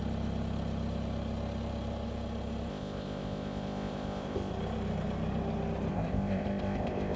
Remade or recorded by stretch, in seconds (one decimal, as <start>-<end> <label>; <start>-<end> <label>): 0.0-2.7 recorded; 2.7-4.5 remade; 4.5-5.9 recorded; 5.9-7.2 remade